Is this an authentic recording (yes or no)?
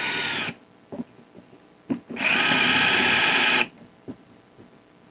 yes